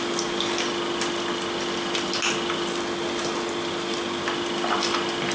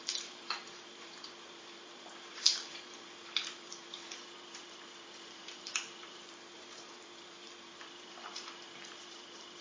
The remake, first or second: second